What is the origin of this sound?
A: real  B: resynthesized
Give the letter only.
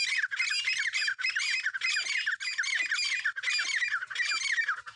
A